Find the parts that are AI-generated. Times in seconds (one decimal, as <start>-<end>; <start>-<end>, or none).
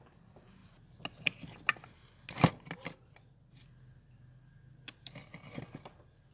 none